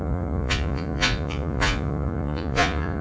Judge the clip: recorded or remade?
remade